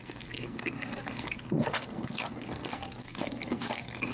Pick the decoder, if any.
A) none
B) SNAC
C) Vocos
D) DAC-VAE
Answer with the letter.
B